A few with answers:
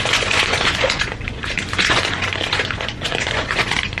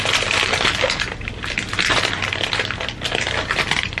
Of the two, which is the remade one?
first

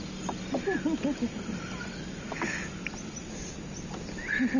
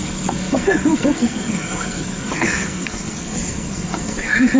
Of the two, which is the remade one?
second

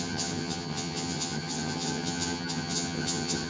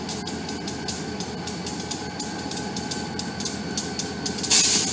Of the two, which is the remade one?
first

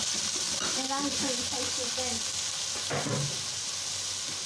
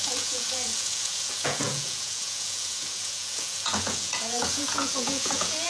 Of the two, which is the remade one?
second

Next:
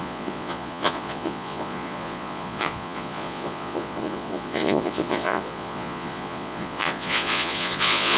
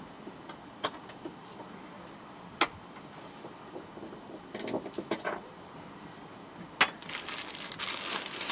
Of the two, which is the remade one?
first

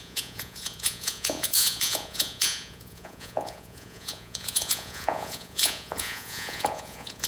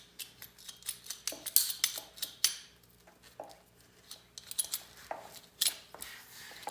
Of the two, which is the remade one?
first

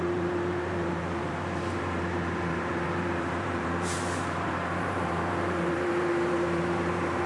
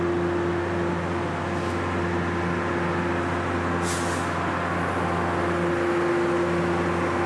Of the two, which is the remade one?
first